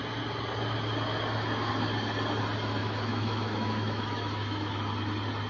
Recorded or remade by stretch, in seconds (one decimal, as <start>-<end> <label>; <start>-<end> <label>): 0.0-2.8 recorded; 2.8-4.8 remade; 4.8-5.5 recorded